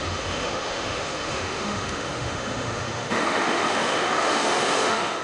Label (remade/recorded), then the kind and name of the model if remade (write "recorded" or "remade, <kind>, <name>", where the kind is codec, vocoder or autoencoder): remade, autoencoder, DAC-VAE